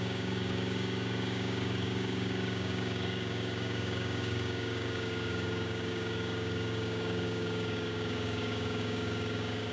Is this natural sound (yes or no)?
no